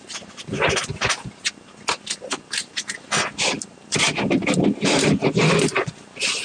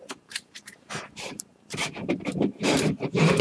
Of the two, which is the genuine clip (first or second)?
first